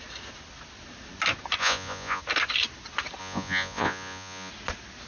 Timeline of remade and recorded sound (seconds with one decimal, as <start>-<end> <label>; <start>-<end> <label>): 0.0-1.6 recorded; 1.6-2.2 remade; 2.2-3.2 recorded; 3.2-4.5 remade; 4.5-5.1 recorded